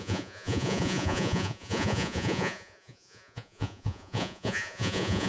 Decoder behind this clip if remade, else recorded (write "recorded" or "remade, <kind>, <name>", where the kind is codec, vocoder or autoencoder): remade, vocoder, Vocos